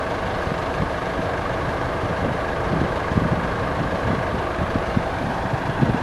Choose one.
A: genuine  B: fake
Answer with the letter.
B